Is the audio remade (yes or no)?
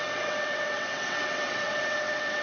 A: yes